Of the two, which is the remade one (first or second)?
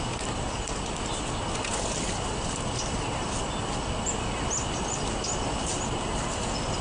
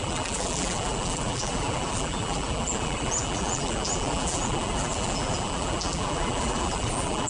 second